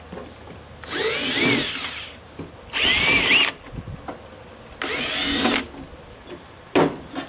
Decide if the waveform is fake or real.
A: real